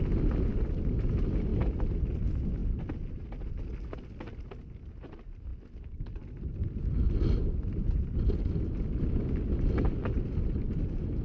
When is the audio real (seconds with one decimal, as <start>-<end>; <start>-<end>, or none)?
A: 0.0-11.2